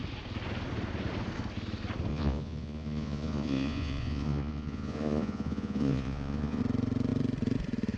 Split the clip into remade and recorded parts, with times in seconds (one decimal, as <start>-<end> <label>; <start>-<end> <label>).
0.0-2.1 recorded; 2.1-6.6 remade; 6.6-8.0 recorded

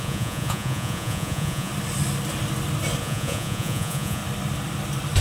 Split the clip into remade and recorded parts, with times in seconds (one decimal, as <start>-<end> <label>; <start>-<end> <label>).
0.0-1.7 remade; 1.7-3.0 recorded; 3.0-4.2 remade; 4.2-5.2 recorded

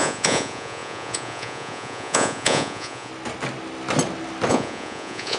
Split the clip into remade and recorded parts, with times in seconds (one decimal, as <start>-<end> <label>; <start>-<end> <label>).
0.0-3.1 remade; 3.1-4.5 recorded; 4.5-5.4 remade

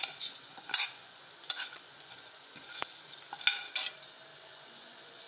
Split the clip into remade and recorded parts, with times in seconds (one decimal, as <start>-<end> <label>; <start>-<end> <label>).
0.0-3.2 remade; 3.2-4.3 recorded; 4.3-5.3 remade